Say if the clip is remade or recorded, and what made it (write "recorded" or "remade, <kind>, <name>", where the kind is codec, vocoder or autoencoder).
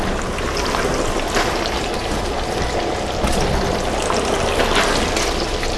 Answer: recorded